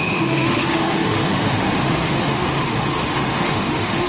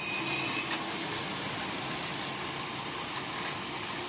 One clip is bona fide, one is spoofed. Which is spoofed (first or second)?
first